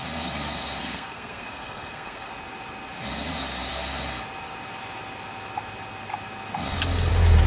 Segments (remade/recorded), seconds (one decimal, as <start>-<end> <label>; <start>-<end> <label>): 0.0-0.8 recorded; 0.8-2.3 remade; 2.3-7.5 recorded